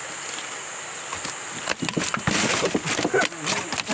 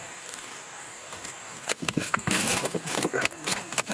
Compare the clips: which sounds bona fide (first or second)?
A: first